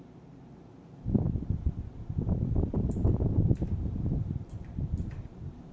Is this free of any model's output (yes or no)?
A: no